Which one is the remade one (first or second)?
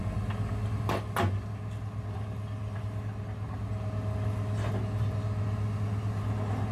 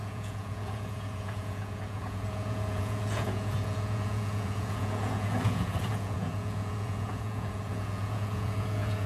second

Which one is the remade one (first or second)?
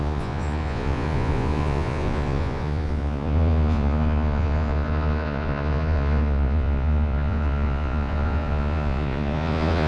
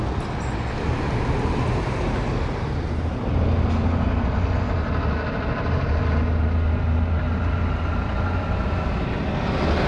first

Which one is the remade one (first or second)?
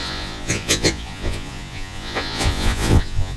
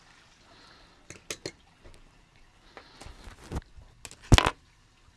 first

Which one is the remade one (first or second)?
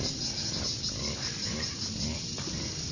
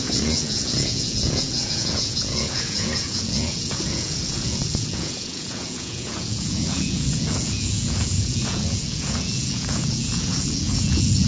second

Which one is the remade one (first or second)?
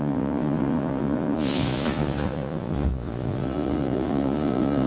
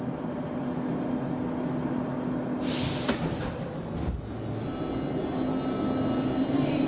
first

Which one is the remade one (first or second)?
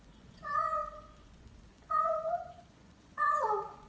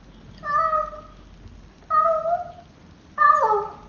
first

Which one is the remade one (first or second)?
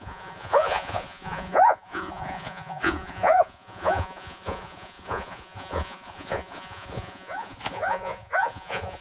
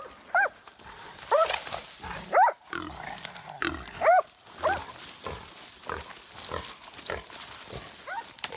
first